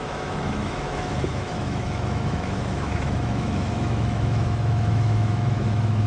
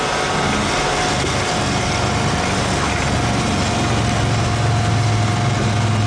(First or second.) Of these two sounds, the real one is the second